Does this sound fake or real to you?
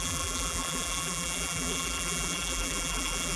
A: fake